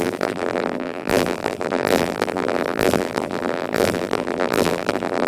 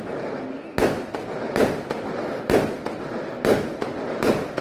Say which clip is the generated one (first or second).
first